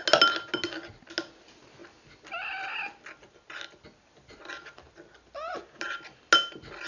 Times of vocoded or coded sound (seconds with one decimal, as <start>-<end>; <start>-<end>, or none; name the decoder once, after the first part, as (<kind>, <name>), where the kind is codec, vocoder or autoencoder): none